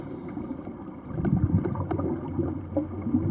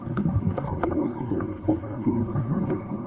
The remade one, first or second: second